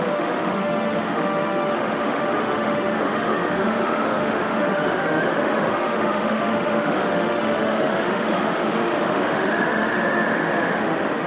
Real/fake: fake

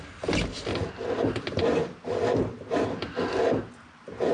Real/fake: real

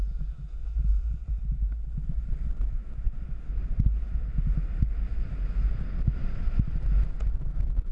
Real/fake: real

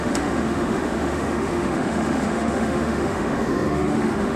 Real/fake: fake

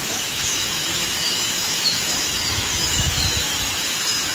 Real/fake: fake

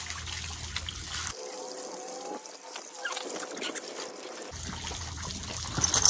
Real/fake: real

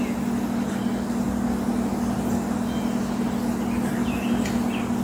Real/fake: real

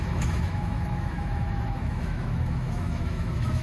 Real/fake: fake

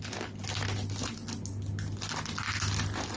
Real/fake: real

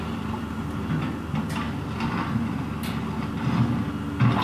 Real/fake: real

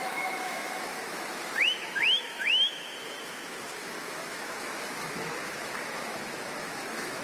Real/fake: fake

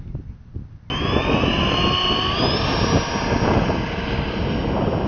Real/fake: real